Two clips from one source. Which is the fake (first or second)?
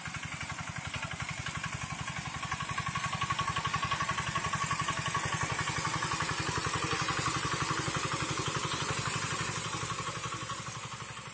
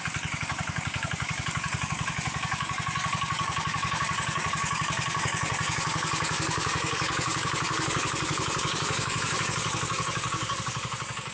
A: second